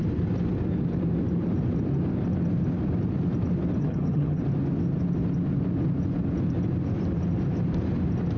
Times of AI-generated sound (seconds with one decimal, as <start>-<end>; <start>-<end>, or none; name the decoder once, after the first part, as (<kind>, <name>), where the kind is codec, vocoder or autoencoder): 3.8-4.4 (vocoder, HiFi-GAN)

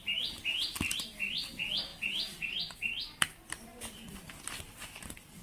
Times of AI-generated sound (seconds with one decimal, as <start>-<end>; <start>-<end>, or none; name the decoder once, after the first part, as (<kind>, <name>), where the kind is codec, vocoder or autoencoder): none